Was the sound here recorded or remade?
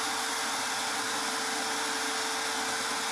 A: recorded